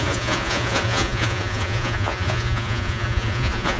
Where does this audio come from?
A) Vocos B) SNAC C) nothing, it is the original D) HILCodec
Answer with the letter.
A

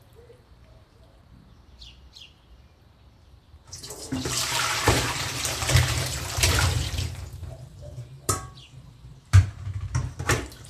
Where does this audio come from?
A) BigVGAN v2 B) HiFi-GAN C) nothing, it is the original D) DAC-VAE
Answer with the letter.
A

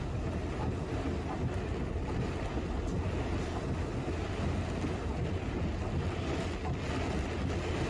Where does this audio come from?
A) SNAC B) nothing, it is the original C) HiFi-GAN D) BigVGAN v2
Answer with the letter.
B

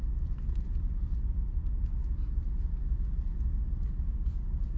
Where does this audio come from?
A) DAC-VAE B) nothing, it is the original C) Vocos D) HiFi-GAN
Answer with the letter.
B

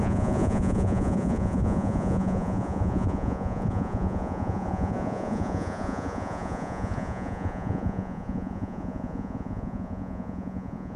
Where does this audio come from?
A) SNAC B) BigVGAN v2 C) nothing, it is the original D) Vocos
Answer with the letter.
D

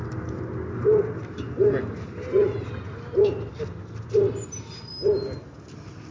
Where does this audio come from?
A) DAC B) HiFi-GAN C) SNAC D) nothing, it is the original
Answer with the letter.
D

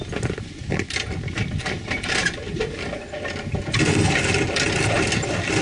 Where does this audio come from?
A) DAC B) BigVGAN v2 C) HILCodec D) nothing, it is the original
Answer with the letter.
D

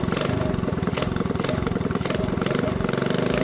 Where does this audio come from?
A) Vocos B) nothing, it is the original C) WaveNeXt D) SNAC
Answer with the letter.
B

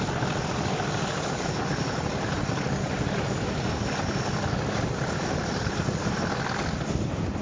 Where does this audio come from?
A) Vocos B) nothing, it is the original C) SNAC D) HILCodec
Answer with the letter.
B